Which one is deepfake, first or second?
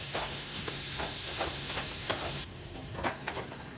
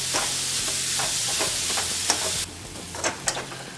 first